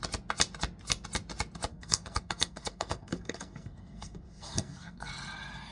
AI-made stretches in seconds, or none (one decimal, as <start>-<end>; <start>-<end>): 1.7-5.1